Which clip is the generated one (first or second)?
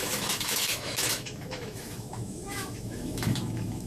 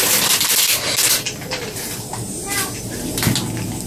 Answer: first